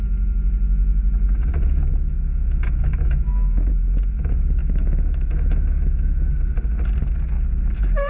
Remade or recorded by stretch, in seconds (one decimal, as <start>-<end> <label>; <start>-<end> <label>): 0.0-1.9 recorded; 1.9-3.7 remade; 3.7-4.6 recorded; 4.6-6.3 remade; 6.3-8.1 recorded